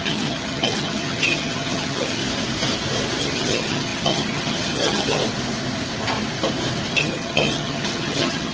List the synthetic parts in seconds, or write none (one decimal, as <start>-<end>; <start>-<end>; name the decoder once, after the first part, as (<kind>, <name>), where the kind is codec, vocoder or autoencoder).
0.0-2.2 (vocoder, HiFi-GAN); 3.2-5.2; 7.0-8.5